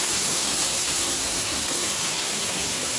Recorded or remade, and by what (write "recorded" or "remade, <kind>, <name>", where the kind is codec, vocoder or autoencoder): remade, codec, SNAC